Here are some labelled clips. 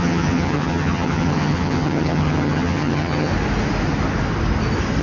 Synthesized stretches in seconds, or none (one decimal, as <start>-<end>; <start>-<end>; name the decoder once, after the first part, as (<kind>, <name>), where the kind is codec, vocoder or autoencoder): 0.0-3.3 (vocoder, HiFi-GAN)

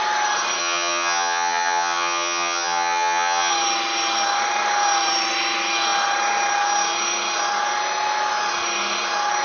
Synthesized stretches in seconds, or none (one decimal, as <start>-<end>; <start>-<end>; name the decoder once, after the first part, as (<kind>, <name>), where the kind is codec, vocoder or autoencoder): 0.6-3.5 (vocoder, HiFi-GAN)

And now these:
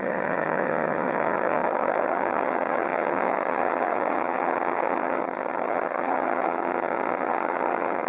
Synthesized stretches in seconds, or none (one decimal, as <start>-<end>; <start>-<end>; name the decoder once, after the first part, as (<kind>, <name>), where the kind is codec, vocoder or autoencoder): 0.0-8.1 (vocoder, HiFi-GAN)

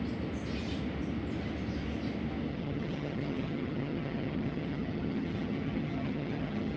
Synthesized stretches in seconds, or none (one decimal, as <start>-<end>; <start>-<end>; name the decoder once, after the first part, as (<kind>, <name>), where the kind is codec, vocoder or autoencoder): 2.5-6.8 (vocoder, HiFi-GAN)

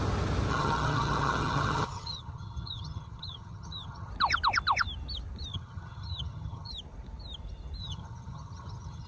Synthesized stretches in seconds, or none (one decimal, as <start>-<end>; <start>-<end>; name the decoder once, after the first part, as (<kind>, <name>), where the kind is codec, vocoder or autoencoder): 0.5-4.1 (vocoder, HiFi-GAN); 5.5-6.7; 7.8-9.1

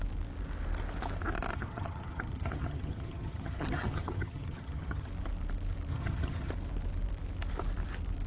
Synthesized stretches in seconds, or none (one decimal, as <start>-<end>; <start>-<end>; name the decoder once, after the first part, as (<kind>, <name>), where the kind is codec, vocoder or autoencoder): 1.5-5.1 (vocoder, HiFi-GAN); 5.9-6.5

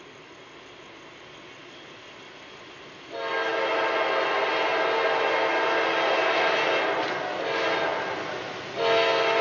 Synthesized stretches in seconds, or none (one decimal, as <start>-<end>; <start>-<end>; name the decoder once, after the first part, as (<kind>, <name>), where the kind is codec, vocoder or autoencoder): none

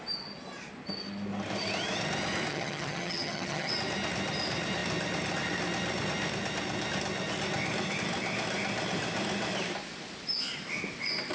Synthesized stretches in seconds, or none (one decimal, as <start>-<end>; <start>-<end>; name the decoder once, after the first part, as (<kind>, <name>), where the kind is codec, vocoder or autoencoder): 2.5-3.7 (vocoder, HiFi-GAN)